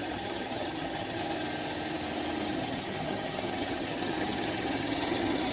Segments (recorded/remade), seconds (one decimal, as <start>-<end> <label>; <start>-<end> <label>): 0.0-1.2 remade; 1.2-2.5 recorded; 2.5-5.5 remade